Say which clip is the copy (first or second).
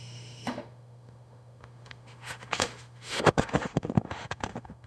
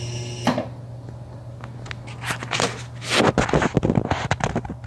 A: first